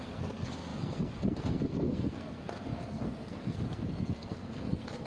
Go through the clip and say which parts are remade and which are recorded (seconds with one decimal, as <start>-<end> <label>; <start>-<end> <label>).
0.0-5.1 remade

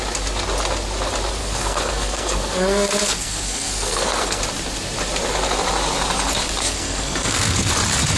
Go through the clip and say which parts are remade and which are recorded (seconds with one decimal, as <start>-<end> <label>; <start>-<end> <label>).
0.0-1.4 recorded; 1.4-4.4 remade; 4.4-6.6 recorded; 6.6-7.7 remade; 7.7-8.2 recorded

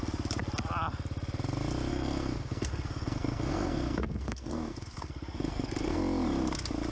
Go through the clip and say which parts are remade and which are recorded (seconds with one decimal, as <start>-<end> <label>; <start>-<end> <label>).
0.0-1.9 recorded; 1.9-6.0 remade; 6.0-6.9 recorded

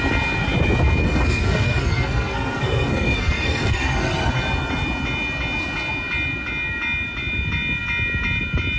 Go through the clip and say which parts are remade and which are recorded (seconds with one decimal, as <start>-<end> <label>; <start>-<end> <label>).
0.0-1.0 recorded; 1.0-4.3 remade; 4.3-8.8 recorded

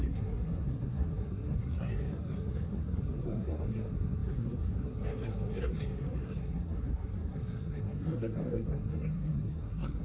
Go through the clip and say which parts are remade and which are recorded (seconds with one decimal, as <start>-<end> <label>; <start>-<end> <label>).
0.0-10.0 remade